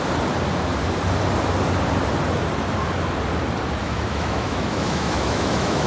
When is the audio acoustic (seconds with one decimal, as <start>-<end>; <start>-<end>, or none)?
0.0-3.8